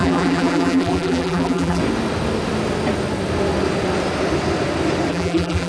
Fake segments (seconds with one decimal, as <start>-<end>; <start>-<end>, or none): 0.0-1.8; 5.1-5.7